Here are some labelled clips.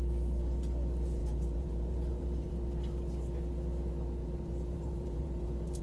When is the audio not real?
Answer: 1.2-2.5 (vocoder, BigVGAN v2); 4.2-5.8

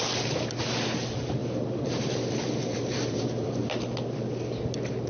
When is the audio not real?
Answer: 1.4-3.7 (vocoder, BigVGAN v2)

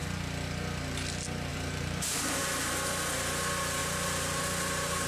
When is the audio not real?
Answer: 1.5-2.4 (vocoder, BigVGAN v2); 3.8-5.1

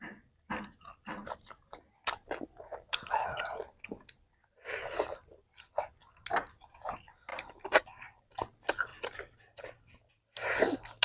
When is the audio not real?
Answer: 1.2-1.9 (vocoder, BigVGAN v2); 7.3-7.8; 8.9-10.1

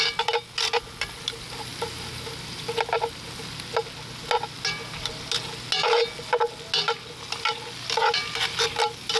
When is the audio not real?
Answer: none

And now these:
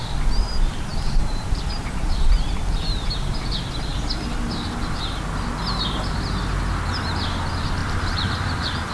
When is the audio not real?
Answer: 0.9-2.2 (vocoder, BigVGAN v2); 7.8-8.9